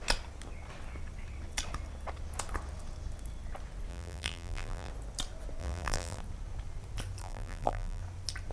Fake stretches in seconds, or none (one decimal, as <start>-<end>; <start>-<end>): 3.9-4.9; 5.6-6.2; 7.2-8.0